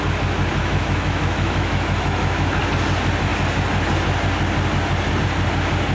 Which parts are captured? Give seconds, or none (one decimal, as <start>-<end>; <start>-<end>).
0.0-0.6; 2.6-5.9